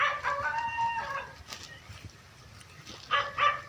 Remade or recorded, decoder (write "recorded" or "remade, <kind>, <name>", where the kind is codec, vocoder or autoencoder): remade, vocoder, BigVGAN v2